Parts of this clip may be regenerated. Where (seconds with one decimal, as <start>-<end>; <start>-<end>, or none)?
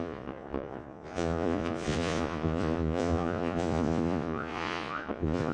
0.0-5.5